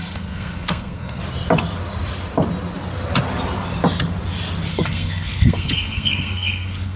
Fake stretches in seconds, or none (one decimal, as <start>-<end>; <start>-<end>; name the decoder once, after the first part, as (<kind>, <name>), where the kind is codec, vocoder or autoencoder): 0.0-1.2 (codec, SNAC); 4.7-7.0